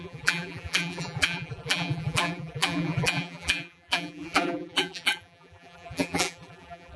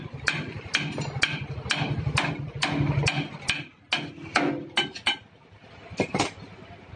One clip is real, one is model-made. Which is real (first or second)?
second